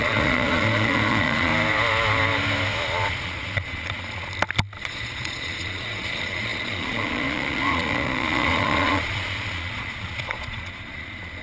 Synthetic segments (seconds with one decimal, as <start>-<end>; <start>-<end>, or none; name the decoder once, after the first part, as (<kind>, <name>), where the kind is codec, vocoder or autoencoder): 0.0-1.5 (vocoder, Vocos); 3.1-4.3; 4.8-11.4